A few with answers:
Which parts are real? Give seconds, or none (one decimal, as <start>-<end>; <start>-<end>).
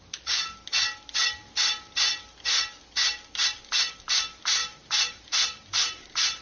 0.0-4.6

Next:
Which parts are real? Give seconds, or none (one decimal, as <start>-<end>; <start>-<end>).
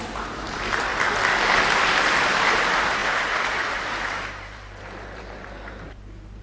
0.9-1.9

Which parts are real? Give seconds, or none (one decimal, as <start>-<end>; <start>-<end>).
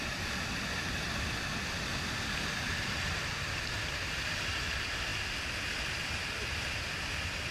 0.0-5.1; 6.3-7.5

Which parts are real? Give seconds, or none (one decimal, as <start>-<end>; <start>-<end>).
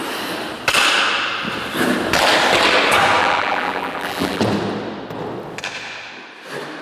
0.0-3.2; 4.4-6.8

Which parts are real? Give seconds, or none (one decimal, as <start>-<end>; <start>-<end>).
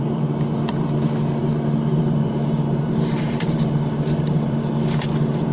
0.0-1.4; 4.7-5.5